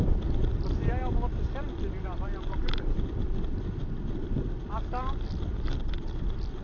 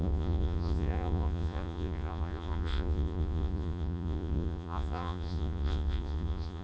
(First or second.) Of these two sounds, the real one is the first